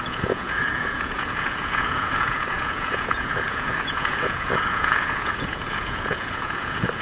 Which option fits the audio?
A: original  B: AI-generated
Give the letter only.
B